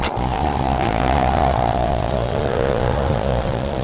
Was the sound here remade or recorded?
remade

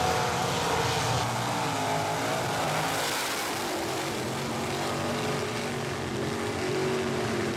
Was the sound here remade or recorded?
recorded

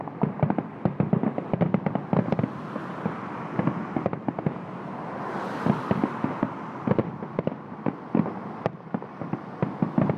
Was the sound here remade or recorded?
recorded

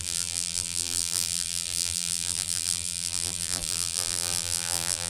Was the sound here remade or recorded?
remade